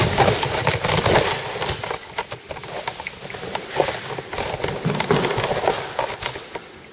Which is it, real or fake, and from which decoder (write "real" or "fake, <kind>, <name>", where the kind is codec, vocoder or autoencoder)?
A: real